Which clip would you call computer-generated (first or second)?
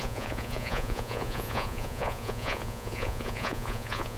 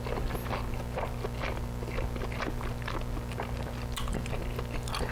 first